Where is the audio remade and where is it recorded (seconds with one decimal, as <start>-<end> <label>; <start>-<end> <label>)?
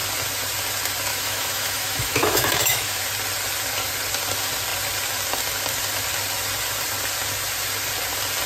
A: 0.0-1.1 recorded; 1.1-3.0 remade; 3.0-8.5 recorded